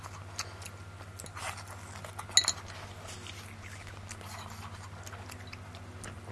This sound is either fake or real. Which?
real